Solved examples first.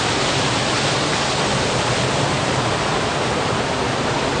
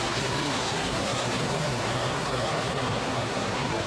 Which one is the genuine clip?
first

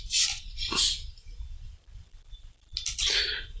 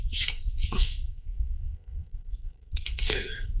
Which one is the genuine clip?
first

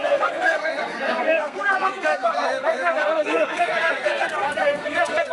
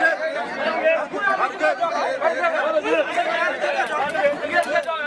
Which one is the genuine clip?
second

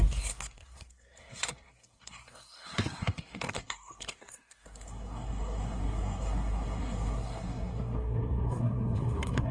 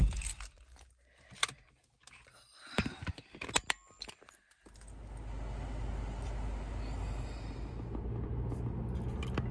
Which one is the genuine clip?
second